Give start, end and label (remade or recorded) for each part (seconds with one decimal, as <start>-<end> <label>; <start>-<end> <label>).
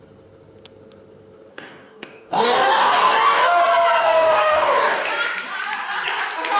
0.0-1.5 recorded; 1.5-3.6 remade; 3.6-4.0 recorded; 4.0-5.1 remade; 5.1-6.6 recorded